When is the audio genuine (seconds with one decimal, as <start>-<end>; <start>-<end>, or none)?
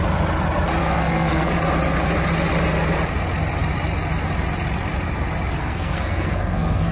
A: 0.0-0.8; 1.5-5.6